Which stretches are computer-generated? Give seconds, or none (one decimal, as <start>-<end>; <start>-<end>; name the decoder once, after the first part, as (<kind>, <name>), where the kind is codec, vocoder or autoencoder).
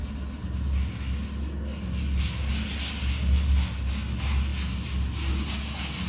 none